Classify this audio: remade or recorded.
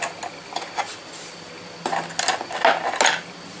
recorded